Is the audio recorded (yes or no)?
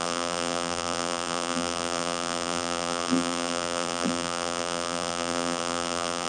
no